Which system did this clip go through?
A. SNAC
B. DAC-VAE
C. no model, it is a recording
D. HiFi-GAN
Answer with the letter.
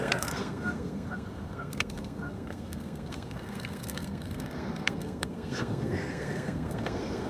A